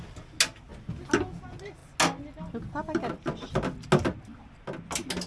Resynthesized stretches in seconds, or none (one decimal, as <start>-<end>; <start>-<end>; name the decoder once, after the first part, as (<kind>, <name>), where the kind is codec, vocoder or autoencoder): none